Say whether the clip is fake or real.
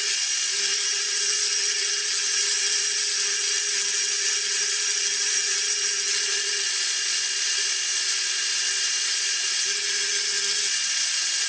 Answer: fake